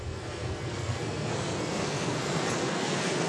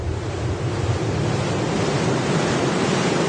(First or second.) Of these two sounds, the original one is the second